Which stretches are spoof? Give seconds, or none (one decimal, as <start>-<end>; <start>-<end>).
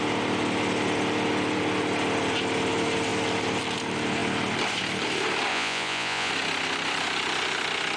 5.5-6.3